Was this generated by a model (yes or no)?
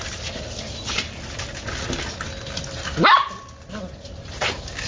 no